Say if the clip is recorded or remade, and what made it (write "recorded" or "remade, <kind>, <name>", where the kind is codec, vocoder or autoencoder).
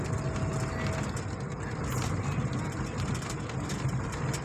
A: recorded